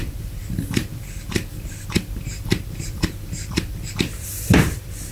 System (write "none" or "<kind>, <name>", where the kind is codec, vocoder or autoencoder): vocoder, BigVGAN v2